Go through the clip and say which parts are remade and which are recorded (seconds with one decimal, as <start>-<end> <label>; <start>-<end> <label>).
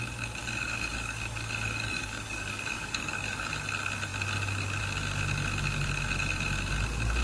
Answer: 0.0-0.4 recorded; 0.4-3.5 remade; 3.5-7.2 recorded